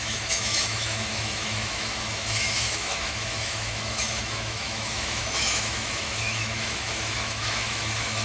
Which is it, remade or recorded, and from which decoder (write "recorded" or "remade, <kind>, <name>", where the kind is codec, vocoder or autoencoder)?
remade, autoencoder, DAC-VAE